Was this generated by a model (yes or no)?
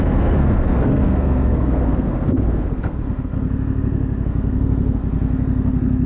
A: yes